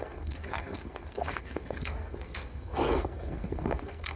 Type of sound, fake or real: fake